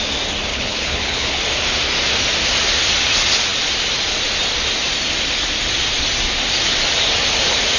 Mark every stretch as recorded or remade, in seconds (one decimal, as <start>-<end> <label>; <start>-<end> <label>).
0.0-0.5 recorded; 0.5-1.4 remade; 1.4-7.8 recorded